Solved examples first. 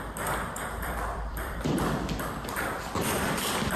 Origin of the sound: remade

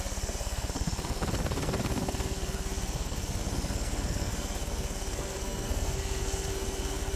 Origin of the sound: remade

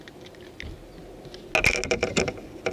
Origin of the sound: recorded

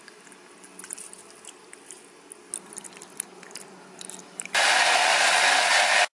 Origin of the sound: recorded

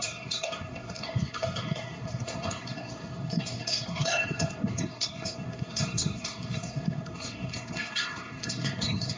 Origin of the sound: remade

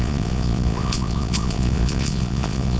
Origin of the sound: remade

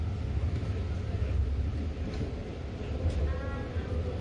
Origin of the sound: recorded